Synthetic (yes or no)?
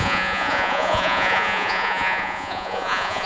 yes